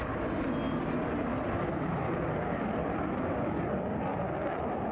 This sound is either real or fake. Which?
real